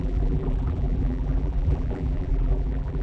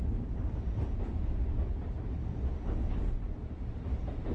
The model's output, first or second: first